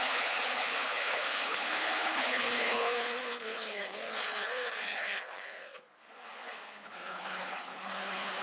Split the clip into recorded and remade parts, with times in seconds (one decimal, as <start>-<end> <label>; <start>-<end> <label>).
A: 0.0-8.4 remade

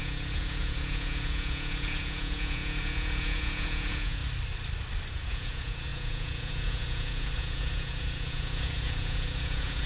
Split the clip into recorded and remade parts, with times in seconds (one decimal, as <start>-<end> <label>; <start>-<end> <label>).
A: 0.0-4.2 remade; 4.2-5.1 recorded; 5.1-9.9 remade

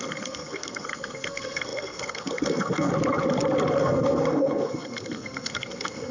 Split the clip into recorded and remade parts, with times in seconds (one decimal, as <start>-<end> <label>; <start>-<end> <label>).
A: 0.0-2.9 remade; 2.9-3.8 recorded; 3.8-6.1 remade

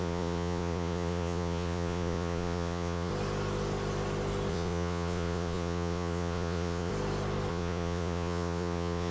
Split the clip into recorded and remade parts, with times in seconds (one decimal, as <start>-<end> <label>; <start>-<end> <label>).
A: 0.0-3.1 remade; 3.1-4.5 recorded; 4.5-6.9 remade; 6.9-7.5 recorded; 7.5-9.1 remade

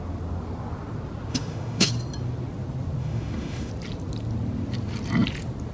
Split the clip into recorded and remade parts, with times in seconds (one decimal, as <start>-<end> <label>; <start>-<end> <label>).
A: 0.0-1.3 recorded; 1.3-1.9 remade; 1.9-3.0 recorded; 3.0-3.7 remade; 3.7-5.7 recorded

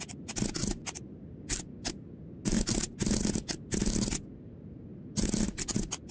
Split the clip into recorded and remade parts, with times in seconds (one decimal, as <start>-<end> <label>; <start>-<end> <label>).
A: 0.0-6.1 recorded

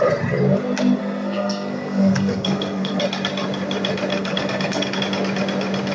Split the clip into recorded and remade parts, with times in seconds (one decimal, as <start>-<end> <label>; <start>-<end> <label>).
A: 0.0-1.0 recorded; 1.0-3.0 remade; 3.0-4.1 recorded; 4.1-5.0 remade; 5.0-5.9 recorded

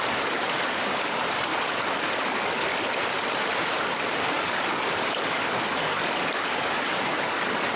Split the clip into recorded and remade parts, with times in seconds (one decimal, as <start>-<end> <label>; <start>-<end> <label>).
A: 0.0-1.5 remade; 1.5-2.2 recorded; 2.2-2.7 remade; 2.7-4.2 recorded; 4.2-7.8 remade